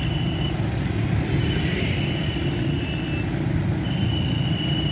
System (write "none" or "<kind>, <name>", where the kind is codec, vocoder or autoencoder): none